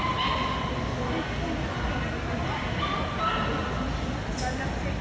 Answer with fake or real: real